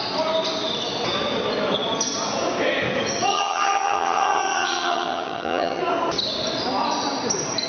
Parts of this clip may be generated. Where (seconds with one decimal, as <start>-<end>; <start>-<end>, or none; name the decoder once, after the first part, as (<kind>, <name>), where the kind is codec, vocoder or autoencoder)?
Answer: 3.3-5.8 (vocoder, HiFi-GAN)